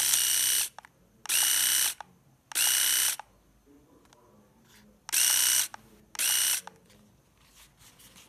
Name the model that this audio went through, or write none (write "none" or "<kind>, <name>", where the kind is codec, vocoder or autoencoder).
none